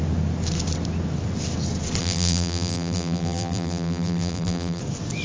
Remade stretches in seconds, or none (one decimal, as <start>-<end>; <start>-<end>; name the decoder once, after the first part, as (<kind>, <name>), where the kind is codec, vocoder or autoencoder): 2.0-4.8 (vocoder, BigVGAN v2)